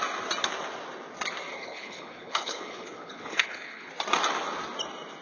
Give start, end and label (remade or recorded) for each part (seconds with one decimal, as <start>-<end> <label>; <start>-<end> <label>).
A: 0.0-1.5 recorded; 1.5-3.9 remade; 3.9-5.2 recorded